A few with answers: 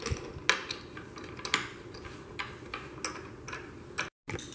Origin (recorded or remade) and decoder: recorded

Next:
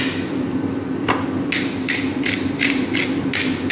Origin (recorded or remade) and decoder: recorded